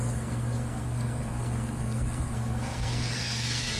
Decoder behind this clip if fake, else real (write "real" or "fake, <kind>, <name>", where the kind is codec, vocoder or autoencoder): fake, codec, SNAC